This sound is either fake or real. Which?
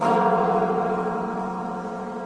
fake